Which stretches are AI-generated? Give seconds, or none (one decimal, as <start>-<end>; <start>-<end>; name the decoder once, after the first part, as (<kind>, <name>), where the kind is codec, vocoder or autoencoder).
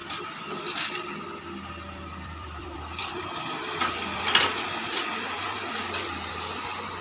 0.0-0.9 (vocoder, BigVGAN v2); 2.1-6.3